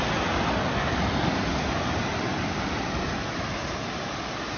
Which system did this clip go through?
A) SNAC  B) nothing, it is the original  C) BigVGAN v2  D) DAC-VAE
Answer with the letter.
B